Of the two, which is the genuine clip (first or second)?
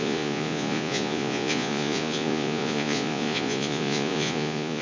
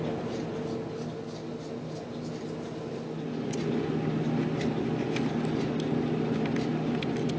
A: second